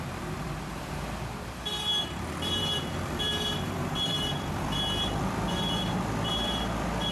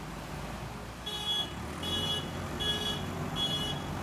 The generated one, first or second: first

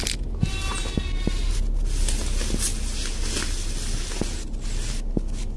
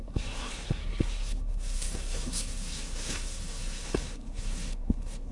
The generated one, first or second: second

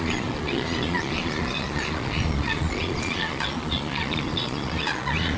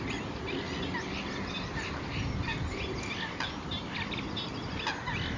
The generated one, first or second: first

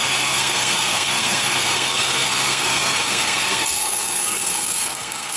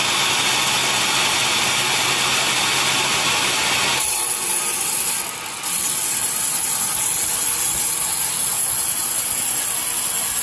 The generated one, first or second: first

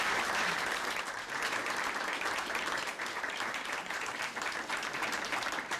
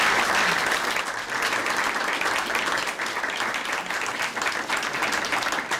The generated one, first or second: first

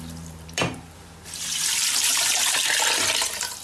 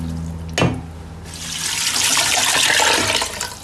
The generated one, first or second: first